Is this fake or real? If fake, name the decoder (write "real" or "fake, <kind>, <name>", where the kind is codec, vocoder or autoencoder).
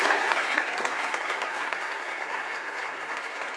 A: fake, codec, SNAC